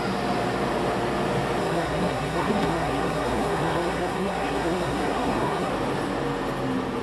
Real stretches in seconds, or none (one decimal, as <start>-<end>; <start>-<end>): 0.0-1.6; 5.7-7.0